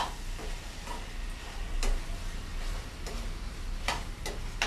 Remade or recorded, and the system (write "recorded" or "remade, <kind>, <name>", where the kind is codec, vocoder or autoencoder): recorded